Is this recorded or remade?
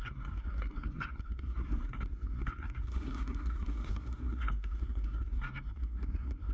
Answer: remade